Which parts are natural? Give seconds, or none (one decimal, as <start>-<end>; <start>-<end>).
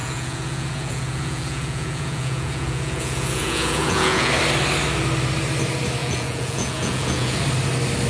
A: 4.3-6.0; 7.4-8.1